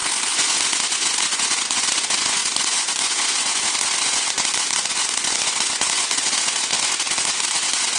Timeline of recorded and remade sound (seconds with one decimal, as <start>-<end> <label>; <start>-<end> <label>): 0.0-8.0 remade